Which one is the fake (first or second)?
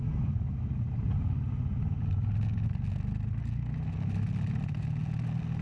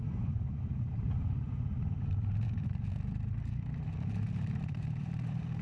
second